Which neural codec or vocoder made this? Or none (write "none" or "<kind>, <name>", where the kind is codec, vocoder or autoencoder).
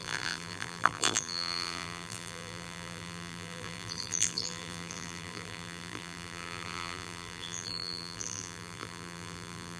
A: vocoder, BigVGAN v2